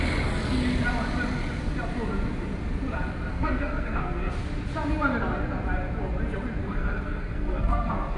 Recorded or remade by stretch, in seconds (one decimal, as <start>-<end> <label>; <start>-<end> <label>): 0.0-3.3 recorded; 3.3-4.3 remade; 4.3-6.6 recorded; 6.6-8.2 remade